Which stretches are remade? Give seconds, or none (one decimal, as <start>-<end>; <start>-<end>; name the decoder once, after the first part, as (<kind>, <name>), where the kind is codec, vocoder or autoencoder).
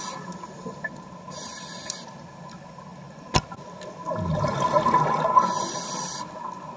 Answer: none